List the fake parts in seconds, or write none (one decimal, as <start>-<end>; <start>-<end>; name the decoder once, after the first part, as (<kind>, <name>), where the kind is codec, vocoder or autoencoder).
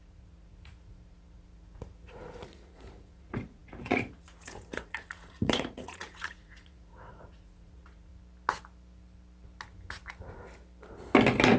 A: 0.0-8.1 (vocoder, Vocos)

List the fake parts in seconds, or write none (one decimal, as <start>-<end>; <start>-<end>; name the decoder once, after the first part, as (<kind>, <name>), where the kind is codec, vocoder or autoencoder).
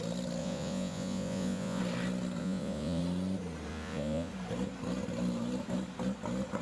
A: 0.4-1.8 (vocoder, Vocos); 2.4-3.0; 3.7-4.3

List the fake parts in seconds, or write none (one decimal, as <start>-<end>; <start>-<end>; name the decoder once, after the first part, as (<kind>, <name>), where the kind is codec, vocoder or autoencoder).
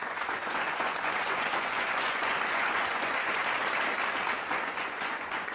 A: 0.0-3.4 (vocoder, Vocos); 4.5-5.5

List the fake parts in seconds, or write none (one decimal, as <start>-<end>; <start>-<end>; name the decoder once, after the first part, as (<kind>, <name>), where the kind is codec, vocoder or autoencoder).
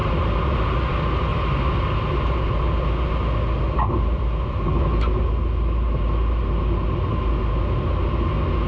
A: none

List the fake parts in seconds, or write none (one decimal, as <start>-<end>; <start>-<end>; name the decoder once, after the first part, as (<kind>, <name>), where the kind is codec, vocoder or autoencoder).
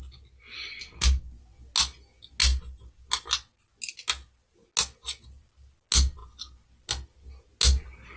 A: none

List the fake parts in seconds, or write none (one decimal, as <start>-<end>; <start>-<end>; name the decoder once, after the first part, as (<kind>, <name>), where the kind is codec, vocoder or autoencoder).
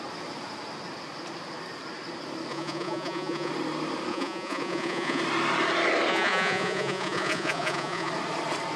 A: 2.5-3.5 (vocoder, Vocos); 4.1-5.2; 6.1-8.1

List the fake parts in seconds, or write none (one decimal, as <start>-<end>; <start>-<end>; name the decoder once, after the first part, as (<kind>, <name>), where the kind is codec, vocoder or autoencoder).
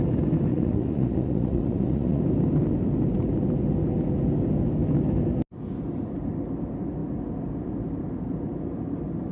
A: 0.5-2.2 (vocoder, Vocos)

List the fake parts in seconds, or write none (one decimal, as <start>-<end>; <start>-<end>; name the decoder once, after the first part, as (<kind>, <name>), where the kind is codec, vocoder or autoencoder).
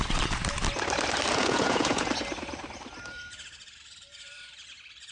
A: 1.4-2.1 (vocoder, Vocos)